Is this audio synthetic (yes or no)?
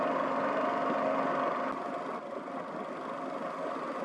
no